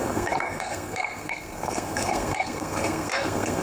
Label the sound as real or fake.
fake